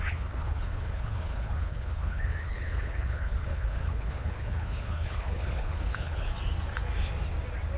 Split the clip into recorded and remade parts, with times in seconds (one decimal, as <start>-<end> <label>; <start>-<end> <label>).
0.0-6.3 remade; 6.3-7.8 recorded